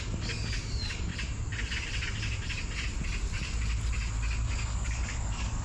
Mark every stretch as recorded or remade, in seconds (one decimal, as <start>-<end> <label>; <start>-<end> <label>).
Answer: 0.0-1.1 remade; 1.1-4.5 recorded; 4.5-5.6 remade